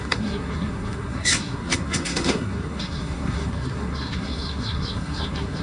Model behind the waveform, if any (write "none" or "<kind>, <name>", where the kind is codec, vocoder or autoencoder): codec, SNAC